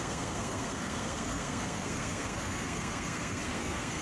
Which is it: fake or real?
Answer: fake